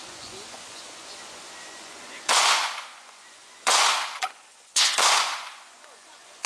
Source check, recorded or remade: remade